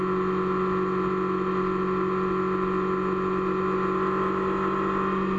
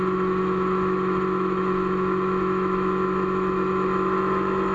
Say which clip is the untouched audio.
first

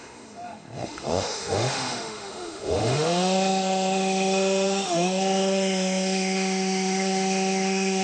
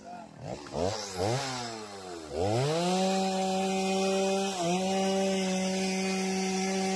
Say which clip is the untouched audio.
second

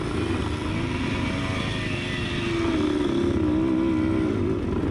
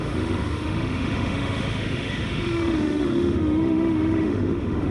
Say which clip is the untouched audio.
first